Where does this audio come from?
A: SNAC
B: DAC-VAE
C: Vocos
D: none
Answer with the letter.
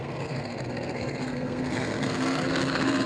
A